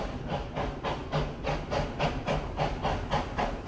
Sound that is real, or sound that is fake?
real